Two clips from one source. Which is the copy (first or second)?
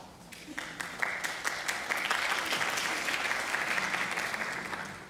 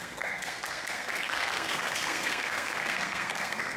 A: second